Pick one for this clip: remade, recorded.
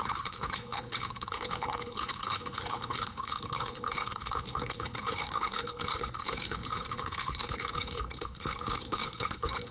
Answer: remade